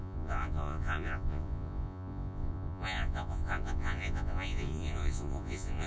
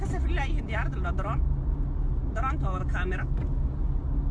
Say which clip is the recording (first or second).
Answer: second